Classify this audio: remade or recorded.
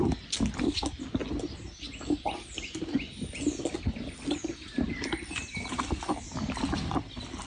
recorded